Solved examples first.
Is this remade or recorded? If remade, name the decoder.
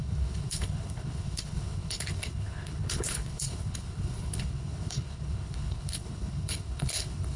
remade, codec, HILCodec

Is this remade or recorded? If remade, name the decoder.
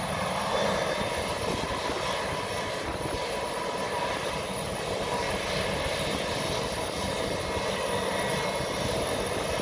recorded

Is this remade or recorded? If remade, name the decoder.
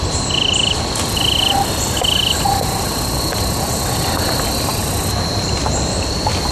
recorded